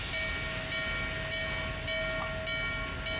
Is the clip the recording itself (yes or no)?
yes